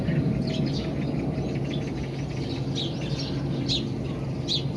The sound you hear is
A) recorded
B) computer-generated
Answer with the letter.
A